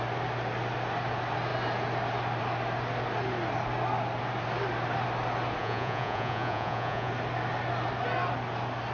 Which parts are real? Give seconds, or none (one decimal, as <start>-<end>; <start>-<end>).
0.0-5.6; 7.1-8.9